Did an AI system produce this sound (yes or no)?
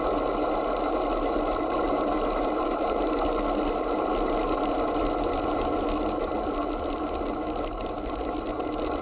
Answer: no